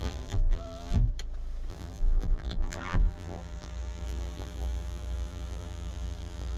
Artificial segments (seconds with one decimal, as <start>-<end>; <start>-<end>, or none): 0.0-1.1; 1.7-6.6